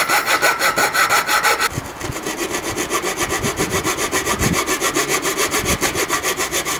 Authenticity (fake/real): real